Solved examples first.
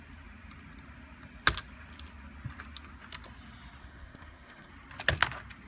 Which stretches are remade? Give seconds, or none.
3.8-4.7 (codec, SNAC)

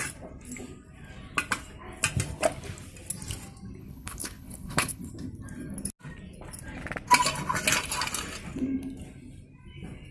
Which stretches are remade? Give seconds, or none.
3.8-5.1 (codec, HILCodec)

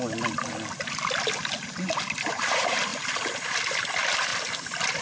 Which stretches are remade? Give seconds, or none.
4.3-5.0 (vocoder, BigVGAN v2)